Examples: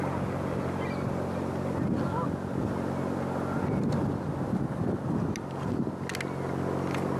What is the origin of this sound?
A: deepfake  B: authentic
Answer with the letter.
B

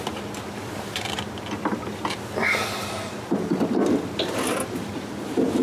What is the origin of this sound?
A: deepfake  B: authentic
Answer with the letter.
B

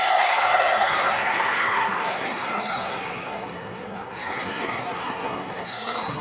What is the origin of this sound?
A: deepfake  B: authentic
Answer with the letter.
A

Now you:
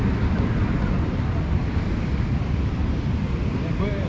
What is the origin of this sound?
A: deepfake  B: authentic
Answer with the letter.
B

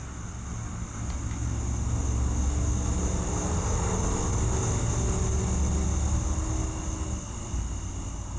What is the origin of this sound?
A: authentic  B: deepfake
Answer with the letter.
A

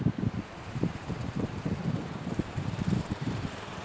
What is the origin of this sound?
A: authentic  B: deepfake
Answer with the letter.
B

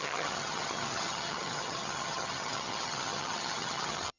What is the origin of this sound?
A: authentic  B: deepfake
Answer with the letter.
B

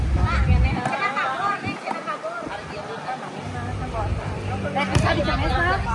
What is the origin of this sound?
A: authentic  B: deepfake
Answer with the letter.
A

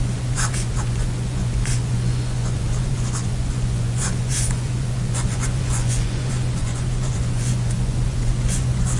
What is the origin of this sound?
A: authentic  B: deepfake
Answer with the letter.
B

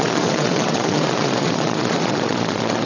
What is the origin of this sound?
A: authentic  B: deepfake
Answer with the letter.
B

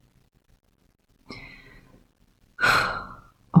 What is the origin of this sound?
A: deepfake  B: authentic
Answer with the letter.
B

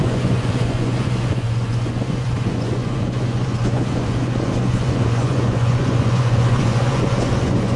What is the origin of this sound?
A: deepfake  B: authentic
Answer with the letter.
A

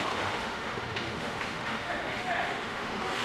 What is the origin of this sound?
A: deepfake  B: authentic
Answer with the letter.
A